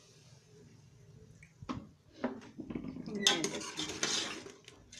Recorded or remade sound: recorded